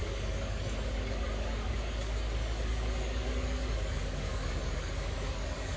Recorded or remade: remade